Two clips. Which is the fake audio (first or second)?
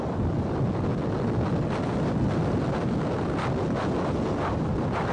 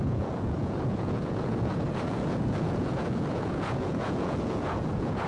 second